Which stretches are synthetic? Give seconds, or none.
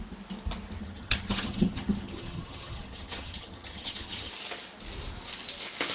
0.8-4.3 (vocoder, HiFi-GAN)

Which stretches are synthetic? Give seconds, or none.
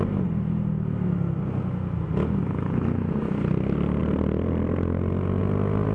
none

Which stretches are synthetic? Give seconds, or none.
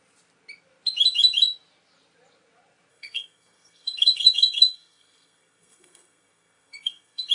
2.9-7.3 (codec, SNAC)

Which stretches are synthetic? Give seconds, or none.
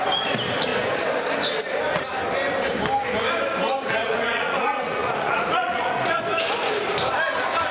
4.0-6.2 (vocoder, Vocos)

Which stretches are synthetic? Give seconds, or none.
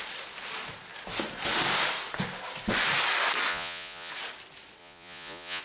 3.5-4.1 (vocoder, Vocos); 4.8-5.6